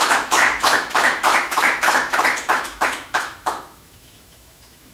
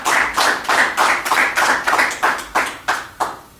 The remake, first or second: first